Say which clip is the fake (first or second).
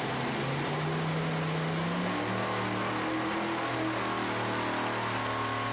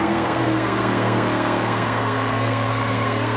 second